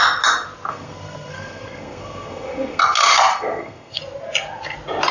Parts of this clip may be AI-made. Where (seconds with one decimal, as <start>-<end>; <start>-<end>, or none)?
0.7-2.8; 3.3-4.0